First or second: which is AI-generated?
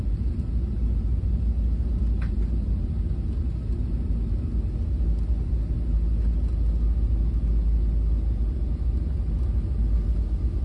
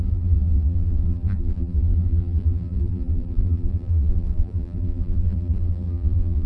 second